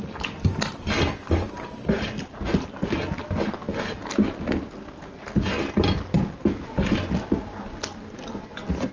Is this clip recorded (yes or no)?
yes